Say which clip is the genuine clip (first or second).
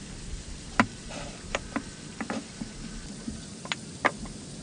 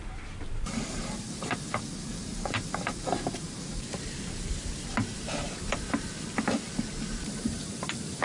first